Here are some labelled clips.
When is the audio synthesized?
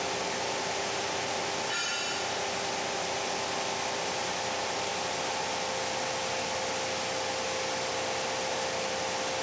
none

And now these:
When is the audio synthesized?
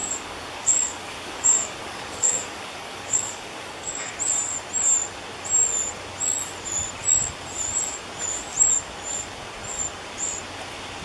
0.0-4.1 (codec, DAC)